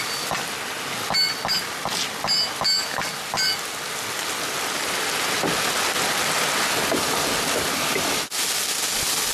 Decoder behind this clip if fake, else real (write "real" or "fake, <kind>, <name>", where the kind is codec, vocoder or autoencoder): real